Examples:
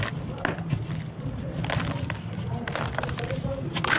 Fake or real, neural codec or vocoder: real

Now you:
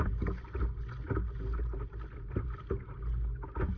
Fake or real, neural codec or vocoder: real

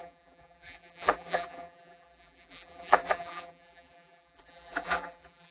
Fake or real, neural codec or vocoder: fake, vocoder, BigVGAN v2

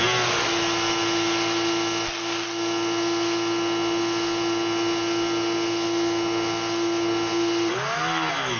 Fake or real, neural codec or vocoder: real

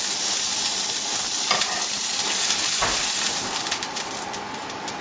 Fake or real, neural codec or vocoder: fake, vocoder, BigVGAN v2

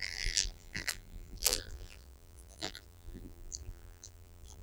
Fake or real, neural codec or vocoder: fake, vocoder, BigVGAN v2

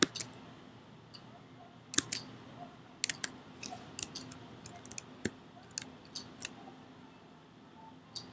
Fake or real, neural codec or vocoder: real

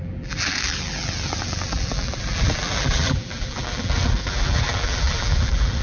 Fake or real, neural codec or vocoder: fake, vocoder, BigVGAN v2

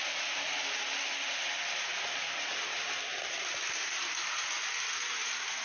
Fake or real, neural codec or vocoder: real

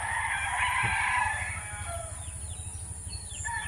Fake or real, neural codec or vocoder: real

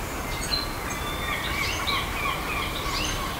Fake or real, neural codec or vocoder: real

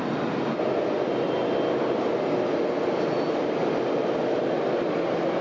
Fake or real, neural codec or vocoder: real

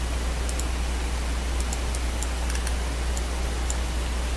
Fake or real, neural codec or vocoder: real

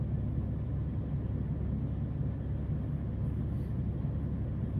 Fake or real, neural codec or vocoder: real